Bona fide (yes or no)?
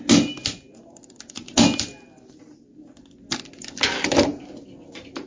yes